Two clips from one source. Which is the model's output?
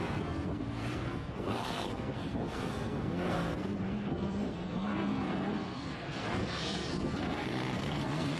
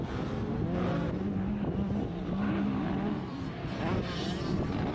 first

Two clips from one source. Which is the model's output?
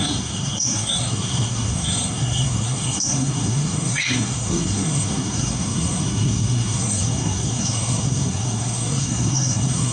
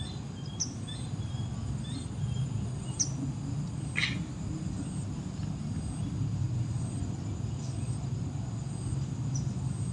first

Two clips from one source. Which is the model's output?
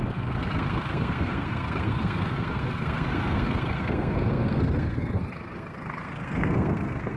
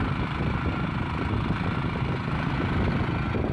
first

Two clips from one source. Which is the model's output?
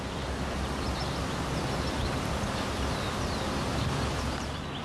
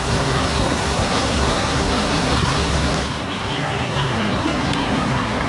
second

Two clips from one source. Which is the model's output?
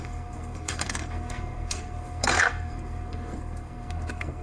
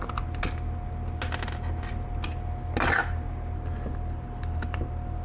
first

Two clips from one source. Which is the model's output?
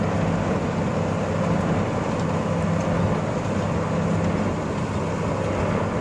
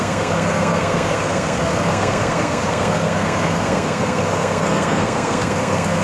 second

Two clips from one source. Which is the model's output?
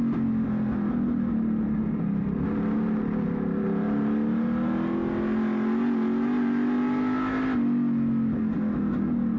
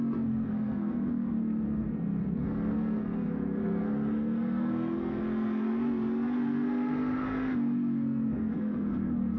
second